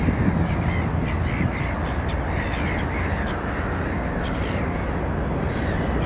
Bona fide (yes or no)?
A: yes